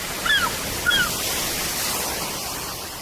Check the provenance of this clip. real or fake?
real